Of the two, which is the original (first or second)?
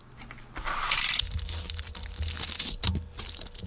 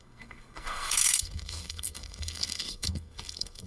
first